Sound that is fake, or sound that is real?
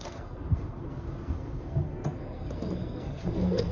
fake